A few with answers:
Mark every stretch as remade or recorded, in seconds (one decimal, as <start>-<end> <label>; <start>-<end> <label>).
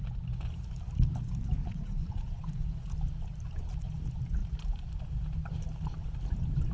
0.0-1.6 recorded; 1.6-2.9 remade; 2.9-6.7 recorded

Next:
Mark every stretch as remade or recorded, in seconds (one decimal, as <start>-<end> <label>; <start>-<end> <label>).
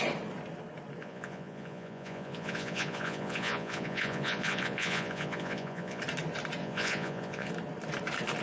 0.0-1.0 recorded; 1.0-6.0 remade; 6.0-6.6 recorded; 6.6-7.5 remade; 7.5-8.4 recorded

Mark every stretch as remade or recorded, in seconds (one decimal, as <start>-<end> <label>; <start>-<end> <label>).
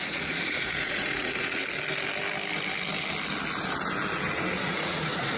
0.0-1.6 remade; 1.6-4.7 recorded; 4.7-5.4 remade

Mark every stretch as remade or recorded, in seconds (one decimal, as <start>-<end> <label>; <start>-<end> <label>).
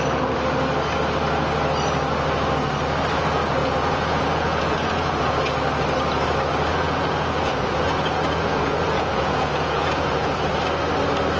0.0-3.6 recorded; 3.6-5.3 remade; 5.3-6.7 recorded; 6.7-10.5 remade; 10.5-11.4 recorded